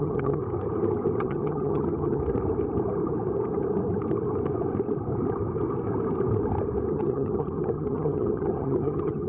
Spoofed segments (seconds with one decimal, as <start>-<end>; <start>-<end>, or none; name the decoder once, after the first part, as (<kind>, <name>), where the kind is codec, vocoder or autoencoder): 0.0-0.4 (vocoder, HiFi-GAN); 1.2-2.2; 6.9-9.3